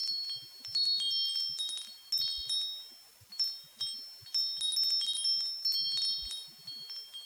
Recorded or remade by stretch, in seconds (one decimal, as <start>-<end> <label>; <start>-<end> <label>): 0.0-7.2 recorded